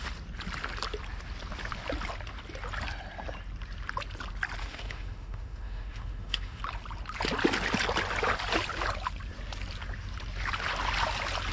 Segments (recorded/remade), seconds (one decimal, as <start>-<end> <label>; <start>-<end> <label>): 0.0-4.6 recorded; 4.6-6.6 remade; 6.6-11.5 recorded